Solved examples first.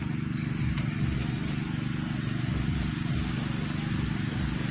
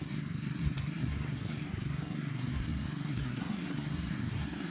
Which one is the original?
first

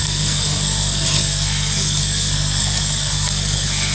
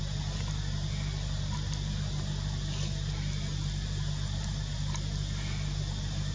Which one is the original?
second